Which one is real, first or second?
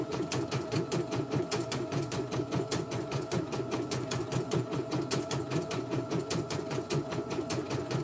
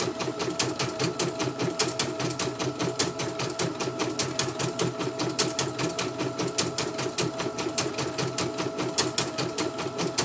second